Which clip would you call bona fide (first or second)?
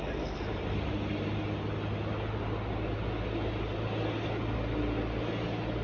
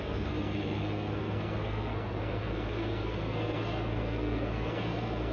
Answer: first